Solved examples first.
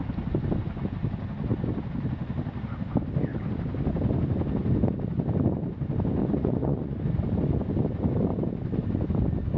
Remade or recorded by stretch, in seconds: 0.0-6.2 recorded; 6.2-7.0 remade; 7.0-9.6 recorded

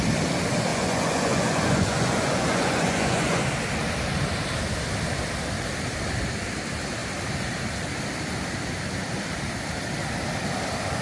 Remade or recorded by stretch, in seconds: 0.0-0.7 recorded; 0.7-3.4 remade; 3.4-11.0 recorded

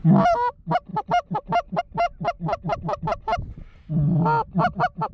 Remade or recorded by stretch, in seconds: 0.0-5.1 recorded